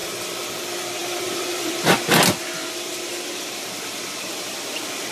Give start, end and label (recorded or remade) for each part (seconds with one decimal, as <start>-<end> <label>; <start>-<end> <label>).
0.0-1.0 recorded; 1.0-1.9 remade; 1.9-5.1 recorded